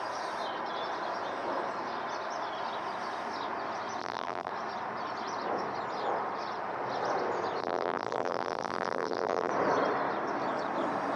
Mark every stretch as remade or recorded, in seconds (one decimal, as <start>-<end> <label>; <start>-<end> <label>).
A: 0.0-4.0 recorded; 4.0-4.5 remade; 4.5-7.6 recorded; 7.6-9.5 remade; 9.5-11.2 recorded